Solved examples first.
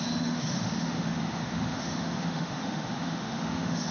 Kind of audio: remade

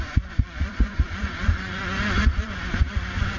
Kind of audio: remade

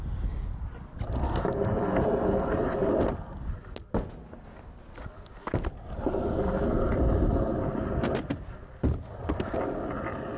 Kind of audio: recorded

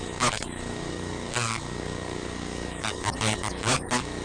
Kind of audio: remade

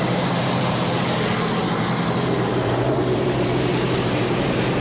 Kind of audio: remade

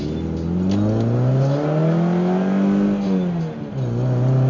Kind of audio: recorded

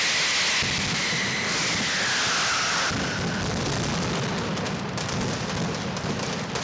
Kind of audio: recorded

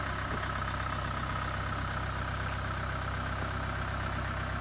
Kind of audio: recorded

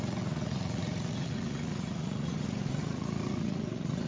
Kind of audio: remade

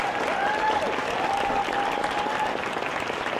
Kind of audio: recorded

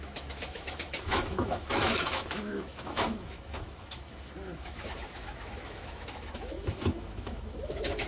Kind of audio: remade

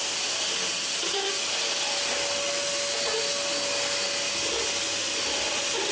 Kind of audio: recorded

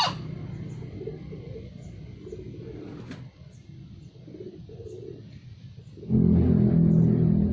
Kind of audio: recorded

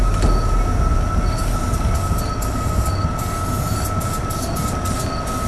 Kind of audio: recorded